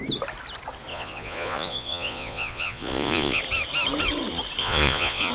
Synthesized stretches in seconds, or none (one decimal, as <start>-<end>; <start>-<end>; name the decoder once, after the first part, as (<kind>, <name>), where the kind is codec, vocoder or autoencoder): 0.9-3.4 (vocoder, Vocos); 4.6-5.3